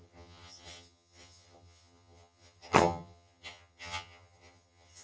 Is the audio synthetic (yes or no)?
yes